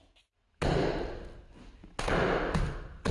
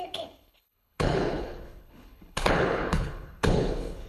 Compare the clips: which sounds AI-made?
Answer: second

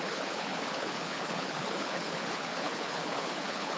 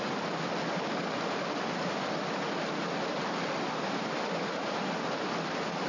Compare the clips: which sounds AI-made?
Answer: first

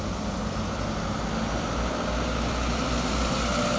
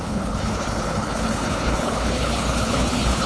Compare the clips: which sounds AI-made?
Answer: second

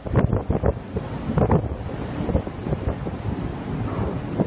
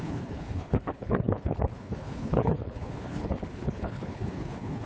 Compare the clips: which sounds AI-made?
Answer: second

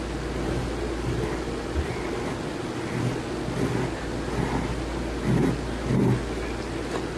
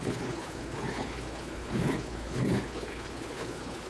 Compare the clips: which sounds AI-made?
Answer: second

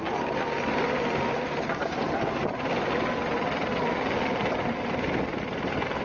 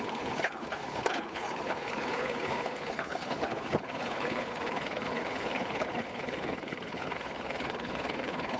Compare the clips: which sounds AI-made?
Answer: second